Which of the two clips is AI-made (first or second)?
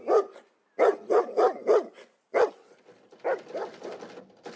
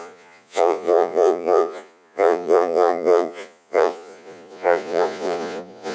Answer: second